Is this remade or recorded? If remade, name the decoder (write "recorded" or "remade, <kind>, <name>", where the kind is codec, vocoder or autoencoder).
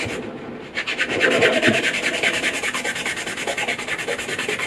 recorded